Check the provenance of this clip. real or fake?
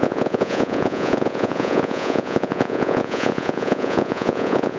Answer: fake